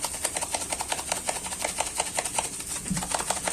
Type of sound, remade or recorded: recorded